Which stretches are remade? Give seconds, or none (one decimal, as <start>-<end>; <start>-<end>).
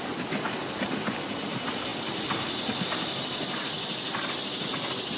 none